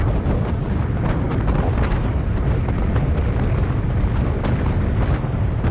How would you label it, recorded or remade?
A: recorded